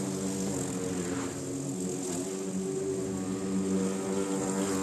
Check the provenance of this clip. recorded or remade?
recorded